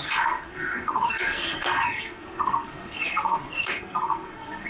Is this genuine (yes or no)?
no